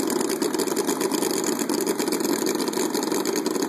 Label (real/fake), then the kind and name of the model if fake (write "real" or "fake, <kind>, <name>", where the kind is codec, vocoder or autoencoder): real